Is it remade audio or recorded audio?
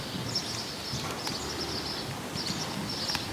recorded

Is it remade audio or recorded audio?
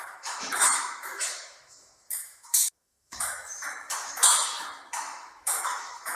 remade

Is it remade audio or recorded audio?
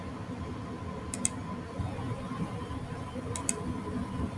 recorded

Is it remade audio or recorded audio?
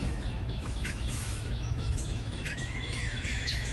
remade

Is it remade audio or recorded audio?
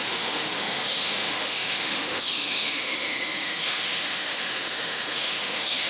remade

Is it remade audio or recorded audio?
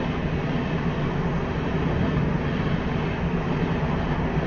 recorded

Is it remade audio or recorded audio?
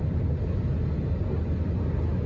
recorded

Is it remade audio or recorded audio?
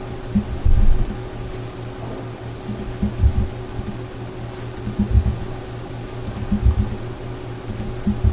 recorded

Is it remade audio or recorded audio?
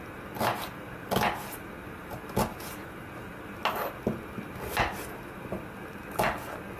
recorded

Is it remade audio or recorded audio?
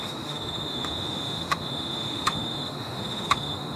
remade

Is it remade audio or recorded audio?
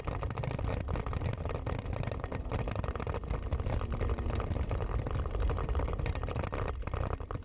recorded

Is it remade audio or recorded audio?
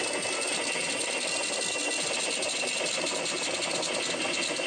recorded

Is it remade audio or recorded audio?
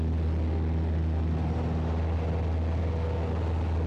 recorded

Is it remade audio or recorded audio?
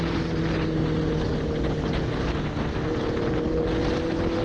recorded